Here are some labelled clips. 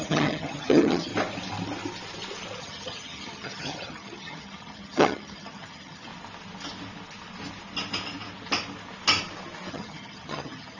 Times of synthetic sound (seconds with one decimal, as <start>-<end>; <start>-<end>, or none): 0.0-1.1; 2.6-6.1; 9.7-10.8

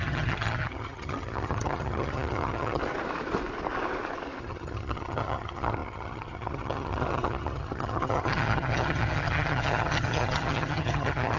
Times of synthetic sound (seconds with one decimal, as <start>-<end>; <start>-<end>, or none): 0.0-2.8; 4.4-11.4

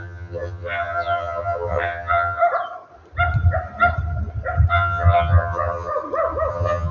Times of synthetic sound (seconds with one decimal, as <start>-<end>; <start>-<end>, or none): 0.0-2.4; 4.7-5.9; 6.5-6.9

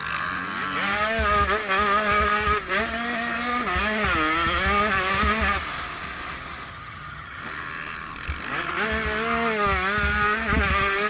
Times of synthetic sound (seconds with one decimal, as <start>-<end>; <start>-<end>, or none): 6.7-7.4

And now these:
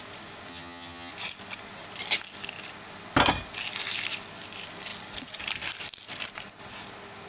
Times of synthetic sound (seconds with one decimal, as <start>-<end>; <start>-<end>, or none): 0.5-1.1

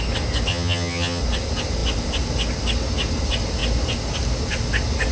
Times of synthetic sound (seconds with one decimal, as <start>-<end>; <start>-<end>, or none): 0.5-1.2

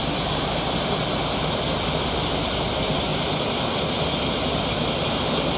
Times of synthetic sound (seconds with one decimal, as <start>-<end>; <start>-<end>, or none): none